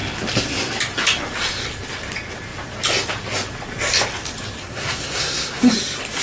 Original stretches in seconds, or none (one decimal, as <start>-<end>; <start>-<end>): 0.0-4.6; 5.7-6.2